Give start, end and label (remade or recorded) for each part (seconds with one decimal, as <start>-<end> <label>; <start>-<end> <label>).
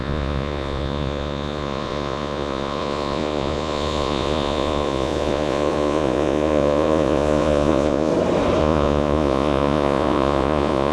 0.0-8.1 remade; 8.1-8.6 recorded; 8.6-10.9 remade